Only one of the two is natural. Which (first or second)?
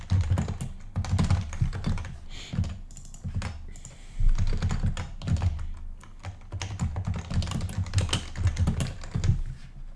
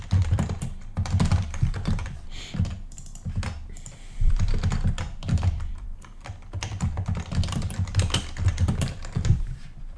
first